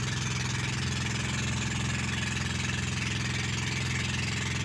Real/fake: real